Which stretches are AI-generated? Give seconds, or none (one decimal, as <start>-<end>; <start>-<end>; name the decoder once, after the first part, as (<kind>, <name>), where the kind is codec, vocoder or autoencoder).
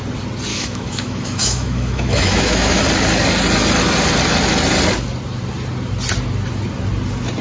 0.5-2.8 (autoencoder, DAC-VAE)